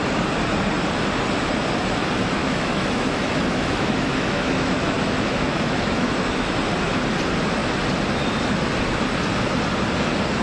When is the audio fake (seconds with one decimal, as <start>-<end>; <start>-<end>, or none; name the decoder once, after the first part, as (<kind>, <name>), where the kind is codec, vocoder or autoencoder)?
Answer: 2.4-6.6 (autoencoder, DAC-VAE)